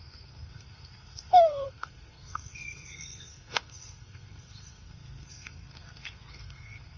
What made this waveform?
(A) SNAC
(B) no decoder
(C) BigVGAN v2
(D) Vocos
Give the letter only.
A